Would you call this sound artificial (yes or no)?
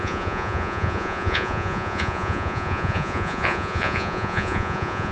yes